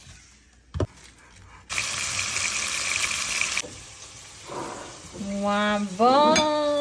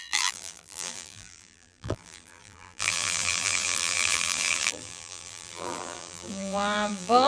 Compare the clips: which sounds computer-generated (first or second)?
second